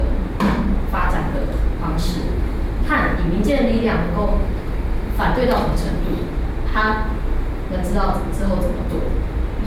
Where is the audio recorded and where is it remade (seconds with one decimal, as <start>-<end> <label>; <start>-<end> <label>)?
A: 0.0-6.7 remade; 6.7-8.9 recorded; 8.9-9.7 remade